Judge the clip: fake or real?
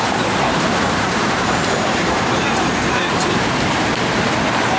fake